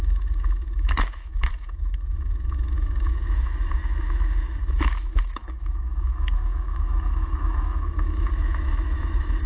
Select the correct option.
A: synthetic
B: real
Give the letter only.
A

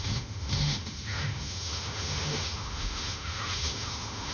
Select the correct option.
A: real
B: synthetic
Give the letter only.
B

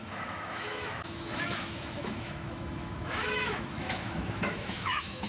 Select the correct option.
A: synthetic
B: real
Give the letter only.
A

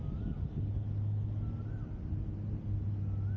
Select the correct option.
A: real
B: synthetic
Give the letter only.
A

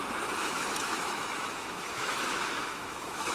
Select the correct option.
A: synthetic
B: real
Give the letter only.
A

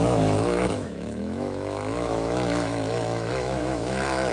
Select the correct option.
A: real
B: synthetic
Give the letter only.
B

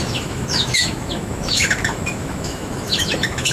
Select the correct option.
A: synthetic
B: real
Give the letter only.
A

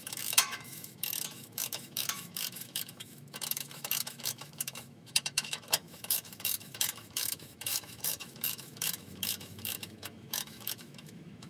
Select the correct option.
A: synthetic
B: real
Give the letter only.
A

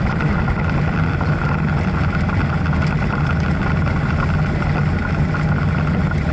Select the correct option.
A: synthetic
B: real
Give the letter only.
B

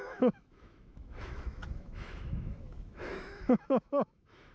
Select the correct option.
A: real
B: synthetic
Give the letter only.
B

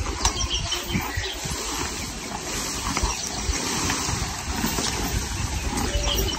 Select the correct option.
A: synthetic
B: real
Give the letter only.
B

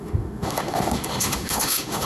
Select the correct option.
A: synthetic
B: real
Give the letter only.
A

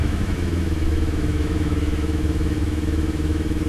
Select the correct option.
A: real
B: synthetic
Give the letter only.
B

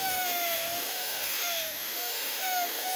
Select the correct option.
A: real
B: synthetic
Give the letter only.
B